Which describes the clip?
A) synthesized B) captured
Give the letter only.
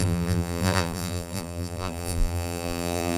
A